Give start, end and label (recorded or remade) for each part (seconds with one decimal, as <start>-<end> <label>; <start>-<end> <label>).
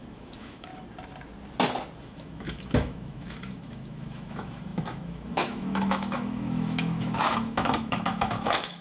0.0-0.7 remade; 0.7-2.0 recorded; 2.0-8.8 remade